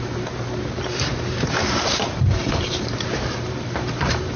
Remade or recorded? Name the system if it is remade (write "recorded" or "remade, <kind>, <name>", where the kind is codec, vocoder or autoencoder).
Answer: remade, vocoder, BigVGAN v2